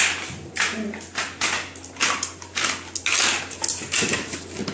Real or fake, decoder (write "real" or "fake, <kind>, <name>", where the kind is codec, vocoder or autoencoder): real